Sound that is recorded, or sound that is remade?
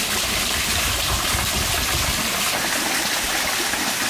recorded